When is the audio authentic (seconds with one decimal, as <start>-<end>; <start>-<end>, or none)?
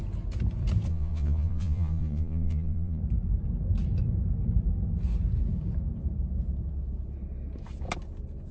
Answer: 0.0-0.9; 3.0-8.5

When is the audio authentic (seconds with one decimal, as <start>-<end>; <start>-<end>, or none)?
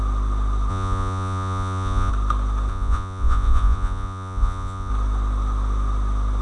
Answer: 0.0-0.7; 2.1-2.7; 4.9-6.4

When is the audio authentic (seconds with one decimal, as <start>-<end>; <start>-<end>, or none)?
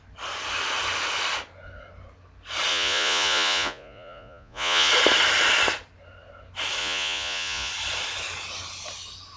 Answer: 0.0-2.7; 4.9-6.8; 7.7-9.4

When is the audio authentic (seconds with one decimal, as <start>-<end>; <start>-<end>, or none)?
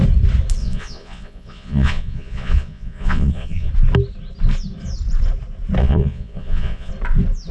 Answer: 0.0-0.6; 3.7-5.8; 6.9-7.5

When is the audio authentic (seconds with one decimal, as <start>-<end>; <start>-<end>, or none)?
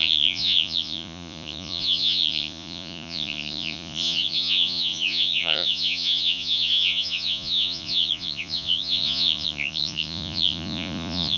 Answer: none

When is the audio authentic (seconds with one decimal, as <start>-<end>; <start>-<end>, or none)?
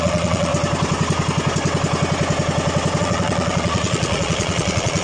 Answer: 0.5-3.0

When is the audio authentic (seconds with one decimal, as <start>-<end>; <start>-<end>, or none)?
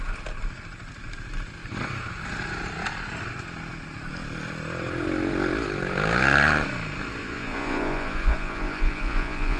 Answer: 0.0-7.2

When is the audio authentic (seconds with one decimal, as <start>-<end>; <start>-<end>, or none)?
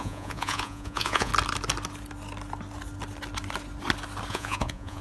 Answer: 1.3-4.3